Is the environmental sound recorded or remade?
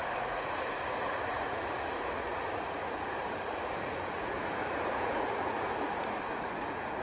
remade